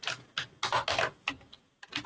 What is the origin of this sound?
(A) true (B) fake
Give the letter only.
A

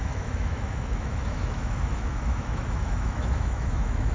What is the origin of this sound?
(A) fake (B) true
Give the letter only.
A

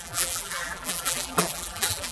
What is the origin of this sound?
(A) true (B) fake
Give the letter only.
B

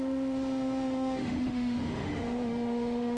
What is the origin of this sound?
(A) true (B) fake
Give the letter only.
B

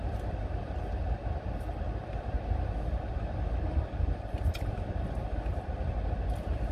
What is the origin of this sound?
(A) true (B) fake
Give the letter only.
A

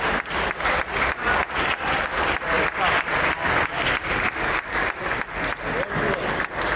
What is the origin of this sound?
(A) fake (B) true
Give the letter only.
B